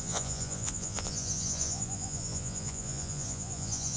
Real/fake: fake